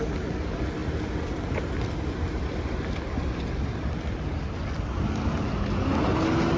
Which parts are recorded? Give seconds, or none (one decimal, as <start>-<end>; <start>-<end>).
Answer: 0.0-6.6